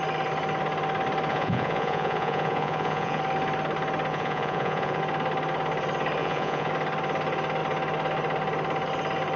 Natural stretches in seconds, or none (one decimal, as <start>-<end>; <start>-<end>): 0.0-1.3; 3.2-4.1; 5.0-6.2; 6.7-9.4